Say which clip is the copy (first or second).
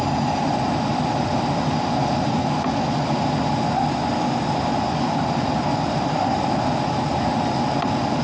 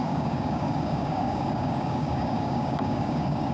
second